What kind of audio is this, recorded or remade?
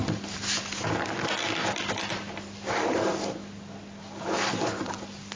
recorded